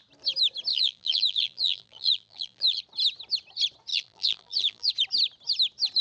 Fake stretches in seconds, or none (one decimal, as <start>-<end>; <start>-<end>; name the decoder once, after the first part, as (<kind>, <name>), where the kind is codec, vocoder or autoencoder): 0.7-2.8 (vocoder, BigVGAN v2); 3.9-4.9

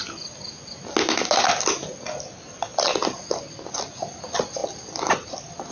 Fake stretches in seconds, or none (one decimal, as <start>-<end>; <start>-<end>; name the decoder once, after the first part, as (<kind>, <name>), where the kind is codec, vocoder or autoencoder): 4.6-5.7 (vocoder, BigVGAN v2)

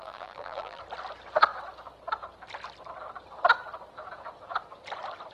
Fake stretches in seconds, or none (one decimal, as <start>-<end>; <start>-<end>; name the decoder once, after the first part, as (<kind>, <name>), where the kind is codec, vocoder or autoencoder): 0.0-0.8 (vocoder, BigVGAN v2)

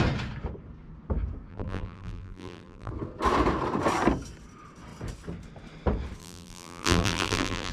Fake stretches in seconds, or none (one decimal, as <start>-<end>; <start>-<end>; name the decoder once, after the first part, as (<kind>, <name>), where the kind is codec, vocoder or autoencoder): 1.5-2.9 (vocoder, BigVGAN v2); 6.2-7.7

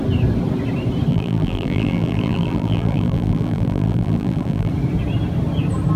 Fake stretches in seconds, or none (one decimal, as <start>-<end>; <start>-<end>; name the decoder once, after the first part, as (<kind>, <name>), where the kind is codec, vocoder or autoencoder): 1.1-4.7 (vocoder, BigVGAN v2)

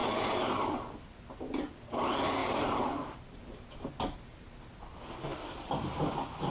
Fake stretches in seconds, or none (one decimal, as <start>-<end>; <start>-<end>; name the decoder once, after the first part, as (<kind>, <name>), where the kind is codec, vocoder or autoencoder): 0.0-0.8 (vocoder, BigVGAN v2); 2.4-3.9; 5.3-5.9

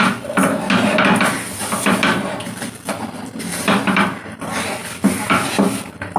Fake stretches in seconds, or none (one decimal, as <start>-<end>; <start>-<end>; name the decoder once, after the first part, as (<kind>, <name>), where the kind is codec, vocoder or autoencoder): 2.4-6.2 (vocoder, BigVGAN v2)

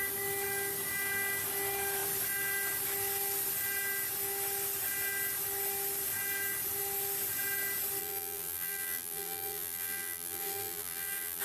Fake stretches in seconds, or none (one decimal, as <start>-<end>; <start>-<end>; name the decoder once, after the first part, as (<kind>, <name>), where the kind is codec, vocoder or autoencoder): 8.0-11.4 (vocoder, BigVGAN v2)